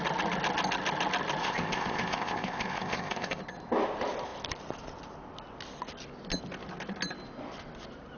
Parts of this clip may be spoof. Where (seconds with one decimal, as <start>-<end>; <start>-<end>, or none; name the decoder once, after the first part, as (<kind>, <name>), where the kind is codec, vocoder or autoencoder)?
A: 1.4-3.4 (codec, ZipCodec)